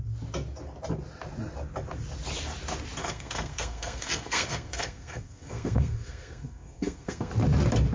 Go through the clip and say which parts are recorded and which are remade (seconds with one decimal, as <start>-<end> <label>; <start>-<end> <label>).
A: 0.0-3.0 recorded; 3.0-7.3 remade; 7.3-7.9 recorded